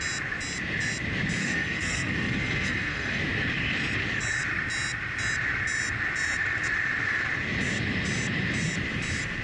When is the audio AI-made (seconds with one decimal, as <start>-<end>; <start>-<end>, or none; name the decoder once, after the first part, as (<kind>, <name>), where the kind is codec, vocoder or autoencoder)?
1.4-3.2 (codec, SNAC)